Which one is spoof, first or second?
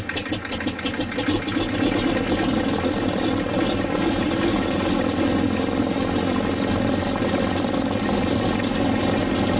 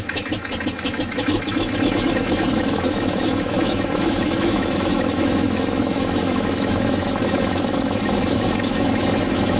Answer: second